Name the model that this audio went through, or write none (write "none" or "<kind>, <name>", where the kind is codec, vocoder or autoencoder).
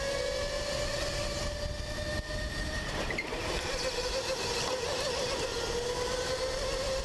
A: none